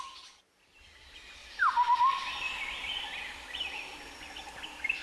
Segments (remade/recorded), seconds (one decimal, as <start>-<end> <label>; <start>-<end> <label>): 0.0-5.0 recorded